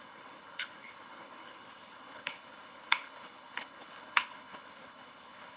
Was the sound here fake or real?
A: fake